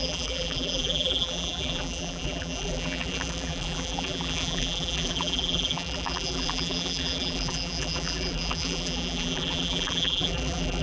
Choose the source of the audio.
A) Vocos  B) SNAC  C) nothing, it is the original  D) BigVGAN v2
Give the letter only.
D